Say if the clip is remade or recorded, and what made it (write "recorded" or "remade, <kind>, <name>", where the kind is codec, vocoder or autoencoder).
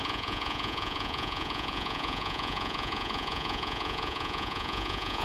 remade, vocoder, Vocos